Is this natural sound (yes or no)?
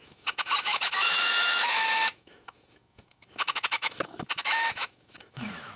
no